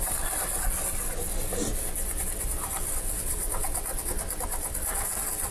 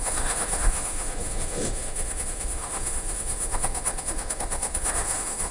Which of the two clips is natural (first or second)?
first